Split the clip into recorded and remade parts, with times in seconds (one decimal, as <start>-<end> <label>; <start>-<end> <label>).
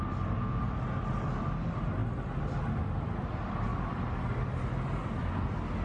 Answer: 0.0-3.7 recorded; 3.7-4.7 remade; 4.7-5.8 recorded